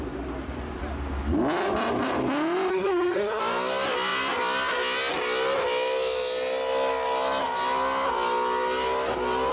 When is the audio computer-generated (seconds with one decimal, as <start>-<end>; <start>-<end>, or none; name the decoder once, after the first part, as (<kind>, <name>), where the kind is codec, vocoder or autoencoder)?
2.7-3.4 (codec, SNAC)